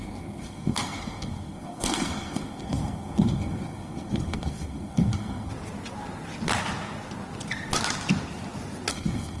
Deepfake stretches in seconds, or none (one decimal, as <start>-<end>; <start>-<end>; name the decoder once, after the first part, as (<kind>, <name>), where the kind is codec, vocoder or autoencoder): 0.0-5.5 (codec, SNAC); 8.9-9.4